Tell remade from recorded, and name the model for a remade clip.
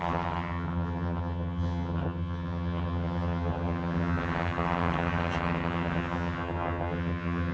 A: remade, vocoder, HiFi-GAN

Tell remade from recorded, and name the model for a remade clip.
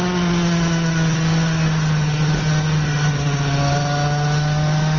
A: recorded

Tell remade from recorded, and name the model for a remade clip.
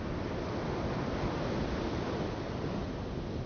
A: recorded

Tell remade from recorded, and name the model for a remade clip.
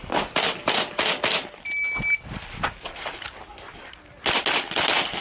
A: recorded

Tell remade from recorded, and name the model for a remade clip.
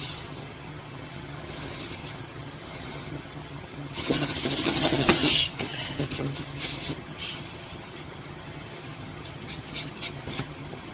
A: remade, vocoder, HiFi-GAN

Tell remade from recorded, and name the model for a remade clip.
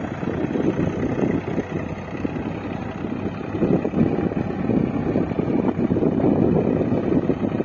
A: recorded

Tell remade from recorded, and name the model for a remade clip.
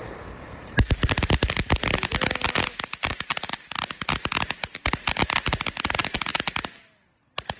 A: recorded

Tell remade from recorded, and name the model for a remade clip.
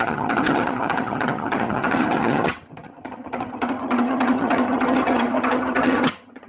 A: remade, vocoder, HiFi-GAN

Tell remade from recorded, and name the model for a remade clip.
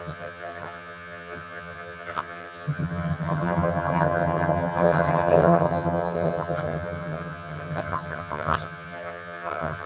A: remade, vocoder, HiFi-GAN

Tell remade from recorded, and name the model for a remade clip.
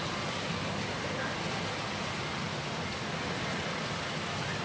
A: recorded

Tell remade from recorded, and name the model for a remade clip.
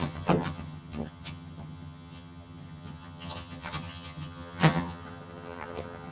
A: remade, vocoder, HiFi-GAN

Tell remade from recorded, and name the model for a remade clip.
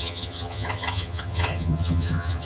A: remade, vocoder, HiFi-GAN